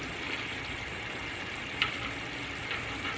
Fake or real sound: real